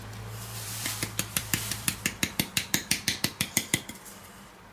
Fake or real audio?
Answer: fake